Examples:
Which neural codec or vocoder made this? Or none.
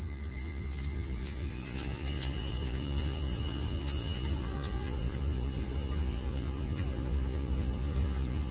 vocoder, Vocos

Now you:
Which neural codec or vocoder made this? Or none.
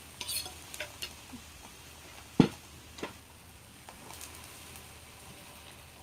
none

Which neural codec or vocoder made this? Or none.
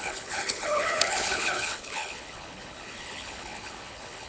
codec, HILCodec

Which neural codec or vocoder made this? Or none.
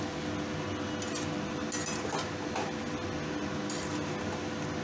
none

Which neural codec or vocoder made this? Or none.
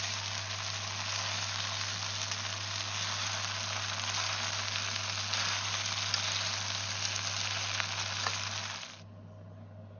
none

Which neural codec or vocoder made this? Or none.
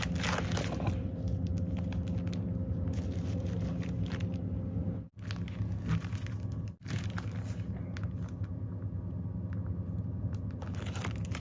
none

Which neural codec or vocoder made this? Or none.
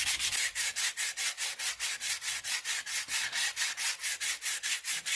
vocoder, BigVGAN v2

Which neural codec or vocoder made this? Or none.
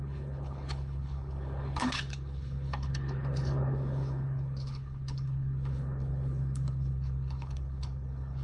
codec, HILCodec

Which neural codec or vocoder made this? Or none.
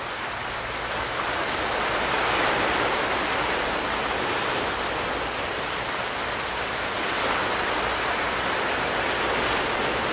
none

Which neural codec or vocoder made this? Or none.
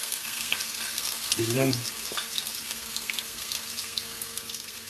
codec, SNAC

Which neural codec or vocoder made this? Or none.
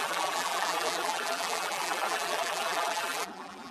vocoder, BigVGAN v2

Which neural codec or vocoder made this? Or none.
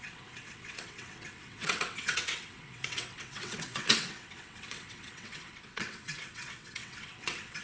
vocoder, WaveNeXt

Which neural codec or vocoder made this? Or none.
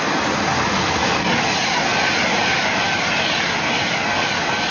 none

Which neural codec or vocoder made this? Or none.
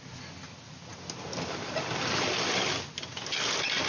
none